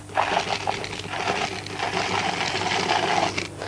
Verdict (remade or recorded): recorded